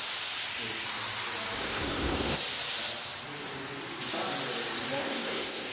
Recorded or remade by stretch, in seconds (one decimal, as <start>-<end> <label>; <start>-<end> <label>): 0.0-1.6 recorded; 1.6-2.4 remade; 2.4-5.0 recorded; 5.0-5.7 remade